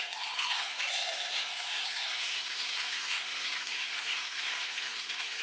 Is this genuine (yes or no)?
no